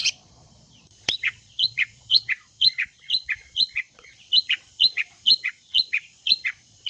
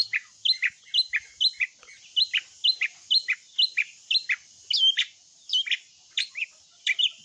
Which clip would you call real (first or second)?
second